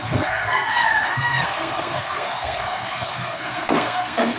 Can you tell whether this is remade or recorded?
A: remade